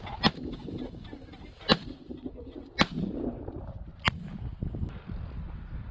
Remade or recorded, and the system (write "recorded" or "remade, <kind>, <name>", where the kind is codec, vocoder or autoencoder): recorded